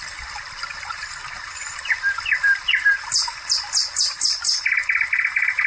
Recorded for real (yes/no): yes